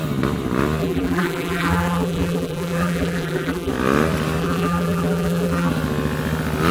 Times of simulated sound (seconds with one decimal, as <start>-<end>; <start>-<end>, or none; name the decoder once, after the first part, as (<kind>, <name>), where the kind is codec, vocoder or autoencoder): 0.8-3.7 (vocoder, BigVGAN v2); 4.4-5.7